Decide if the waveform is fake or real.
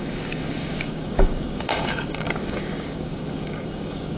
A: fake